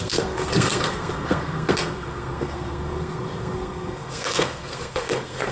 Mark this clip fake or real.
fake